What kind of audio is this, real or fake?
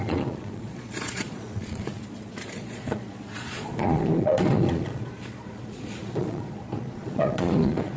fake